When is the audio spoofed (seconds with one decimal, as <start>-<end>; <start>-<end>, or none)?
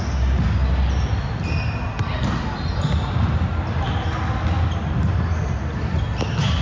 none